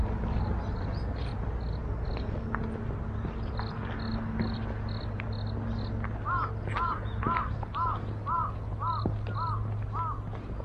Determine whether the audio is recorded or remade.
recorded